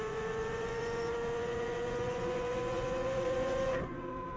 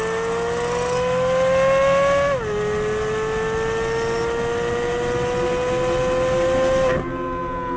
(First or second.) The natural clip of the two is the second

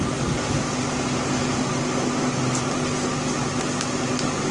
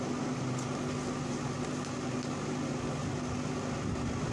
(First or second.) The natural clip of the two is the first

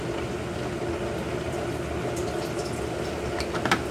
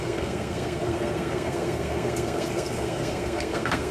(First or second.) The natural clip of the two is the first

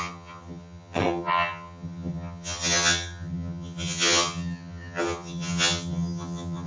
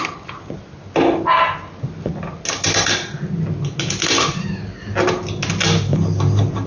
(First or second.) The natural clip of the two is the second